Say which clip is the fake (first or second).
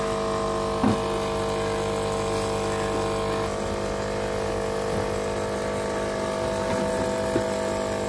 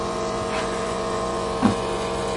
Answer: second